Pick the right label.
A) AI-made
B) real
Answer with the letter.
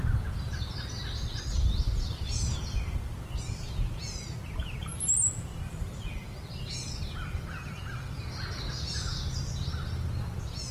B